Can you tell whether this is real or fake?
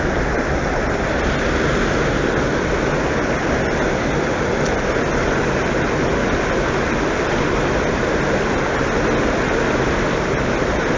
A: real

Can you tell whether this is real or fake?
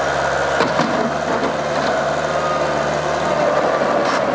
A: real